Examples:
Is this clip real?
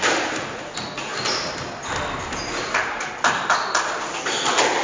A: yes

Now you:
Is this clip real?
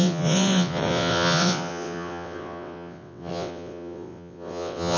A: no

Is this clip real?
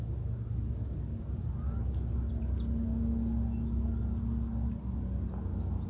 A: yes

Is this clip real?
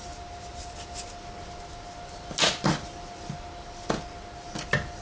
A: yes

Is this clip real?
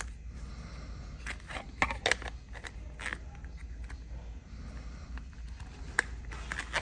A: yes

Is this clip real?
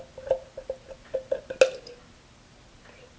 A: yes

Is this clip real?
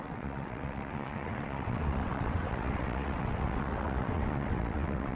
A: no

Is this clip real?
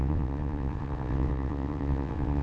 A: no